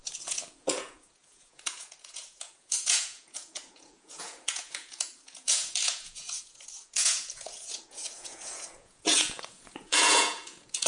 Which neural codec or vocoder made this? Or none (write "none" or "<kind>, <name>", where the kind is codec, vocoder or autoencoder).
vocoder, Vocos